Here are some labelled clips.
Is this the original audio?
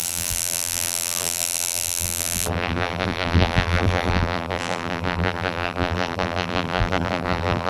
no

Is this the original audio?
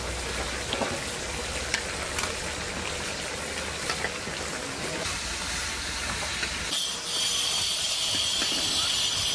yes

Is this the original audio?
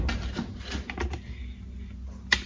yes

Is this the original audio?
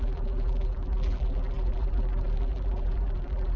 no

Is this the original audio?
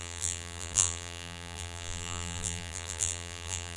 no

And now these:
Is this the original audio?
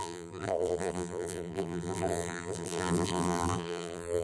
no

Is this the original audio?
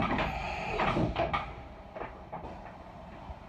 no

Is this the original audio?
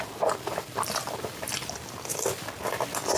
yes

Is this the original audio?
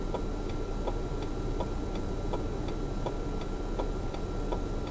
yes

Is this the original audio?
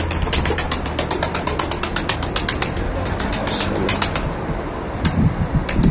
yes